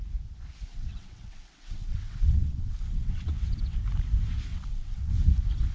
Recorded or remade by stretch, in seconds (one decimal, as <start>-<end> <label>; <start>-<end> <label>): 0.0-0.7 recorded; 0.7-3.8 remade; 3.8-4.5 recorded; 4.5-5.1 remade; 5.1-5.7 recorded